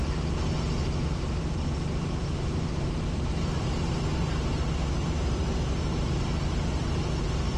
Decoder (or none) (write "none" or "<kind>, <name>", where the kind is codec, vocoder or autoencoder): vocoder, BigVGAN v2